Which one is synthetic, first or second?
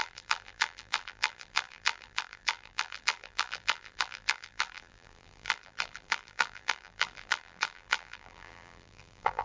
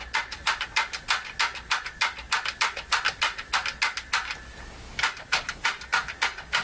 first